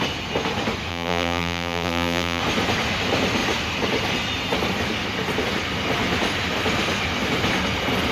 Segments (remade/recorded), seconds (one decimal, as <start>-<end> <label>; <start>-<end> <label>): 0.0-0.9 recorded; 0.9-2.4 remade; 2.4-8.1 recorded